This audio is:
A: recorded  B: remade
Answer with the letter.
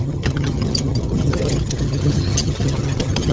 B